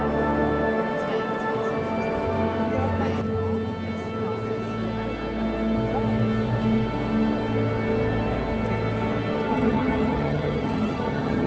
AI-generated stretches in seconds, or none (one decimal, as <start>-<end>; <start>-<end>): 9.5-11.5

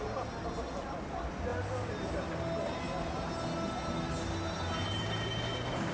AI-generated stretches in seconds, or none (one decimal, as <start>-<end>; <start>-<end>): none

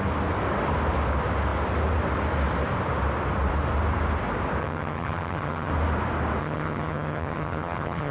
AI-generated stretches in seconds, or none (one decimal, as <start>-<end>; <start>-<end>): 4.6-5.7; 6.4-8.1

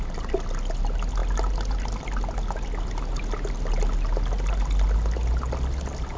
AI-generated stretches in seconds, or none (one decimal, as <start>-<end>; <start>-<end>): none

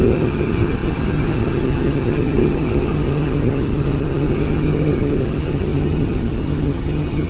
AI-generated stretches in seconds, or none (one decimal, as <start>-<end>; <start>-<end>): 0.0-7.3